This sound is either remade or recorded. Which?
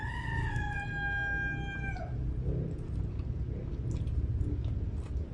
recorded